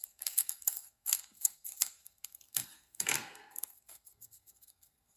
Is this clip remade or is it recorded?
remade